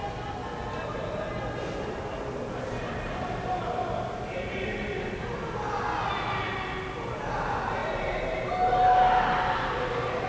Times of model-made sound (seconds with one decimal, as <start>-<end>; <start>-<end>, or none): 4.3-4.8; 7.8-8.4